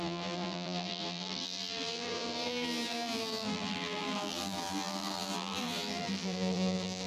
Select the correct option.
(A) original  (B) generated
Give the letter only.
B